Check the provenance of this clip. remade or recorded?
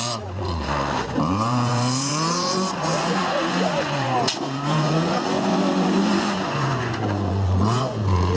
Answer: remade